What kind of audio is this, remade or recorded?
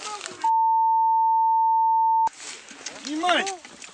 recorded